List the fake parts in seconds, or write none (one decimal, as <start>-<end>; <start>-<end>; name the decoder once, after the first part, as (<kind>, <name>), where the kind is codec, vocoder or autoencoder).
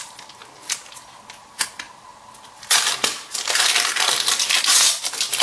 none